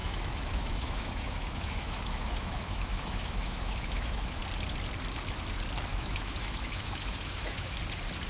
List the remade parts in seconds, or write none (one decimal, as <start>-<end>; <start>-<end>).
0.0-4.4; 5.9-7.8